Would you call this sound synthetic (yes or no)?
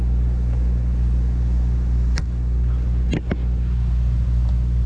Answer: no